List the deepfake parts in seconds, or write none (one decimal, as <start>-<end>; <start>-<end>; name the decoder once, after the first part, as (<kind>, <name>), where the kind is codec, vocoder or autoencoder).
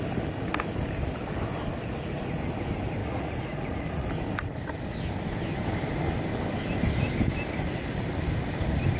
3.0-4.1 (vocoder, Vocos)